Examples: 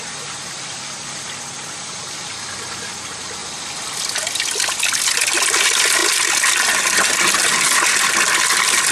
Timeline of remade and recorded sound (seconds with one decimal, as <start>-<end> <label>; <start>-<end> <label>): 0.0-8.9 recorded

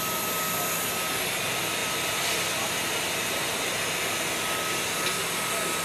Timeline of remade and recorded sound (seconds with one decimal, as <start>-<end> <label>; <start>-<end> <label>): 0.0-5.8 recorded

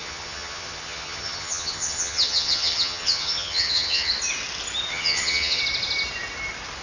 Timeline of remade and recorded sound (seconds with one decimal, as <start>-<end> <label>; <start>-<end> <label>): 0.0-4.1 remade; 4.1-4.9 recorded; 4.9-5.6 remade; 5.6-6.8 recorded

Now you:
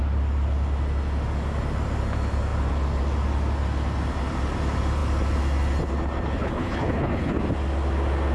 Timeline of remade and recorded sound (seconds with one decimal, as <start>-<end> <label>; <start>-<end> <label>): 0.0-6.4 recorded; 6.4-7.4 remade; 7.4-8.3 recorded

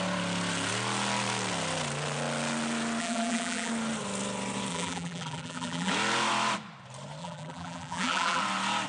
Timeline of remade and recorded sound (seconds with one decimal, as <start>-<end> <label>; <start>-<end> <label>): 0.0-3.0 recorded; 3.0-3.7 remade; 3.7-4.7 recorded; 4.7-5.9 remade; 5.9-7.2 recorded; 7.2-8.4 remade; 8.4-8.9 recorded